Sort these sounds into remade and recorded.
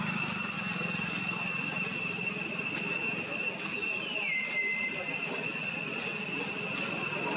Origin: recorded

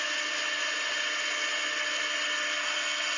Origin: recorded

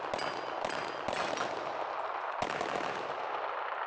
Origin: recorded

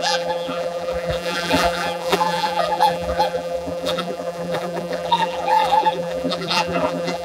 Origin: remade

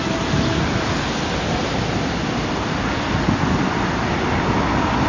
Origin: recorded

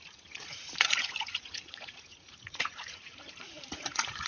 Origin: remade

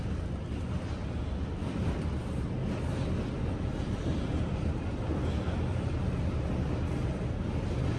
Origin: recorded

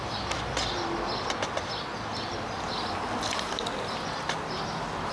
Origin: recorded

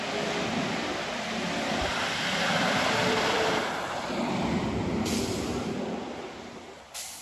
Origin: remade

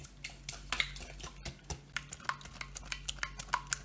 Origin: recorded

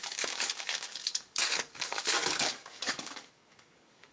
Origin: remade